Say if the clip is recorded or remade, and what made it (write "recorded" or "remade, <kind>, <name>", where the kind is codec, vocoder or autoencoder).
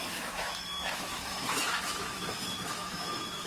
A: remade, autoencoder, DAC-VAE